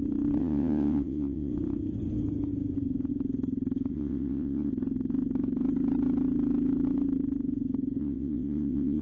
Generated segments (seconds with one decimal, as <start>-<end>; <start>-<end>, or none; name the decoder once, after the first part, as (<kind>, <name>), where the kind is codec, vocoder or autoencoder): 0.4-1.5 (vocoder, WaveNeXt); 3.9-4.7; 8.0-9.0